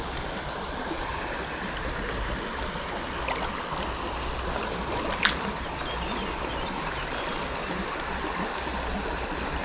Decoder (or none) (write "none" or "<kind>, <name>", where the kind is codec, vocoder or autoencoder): none